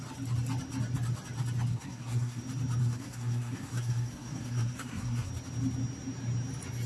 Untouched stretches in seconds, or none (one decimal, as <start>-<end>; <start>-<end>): 0.0-1.7; 2.4-2.8; 5.3-6.9